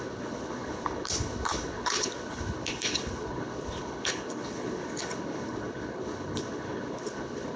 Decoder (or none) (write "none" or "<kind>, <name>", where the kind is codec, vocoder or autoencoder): codec, HILCodec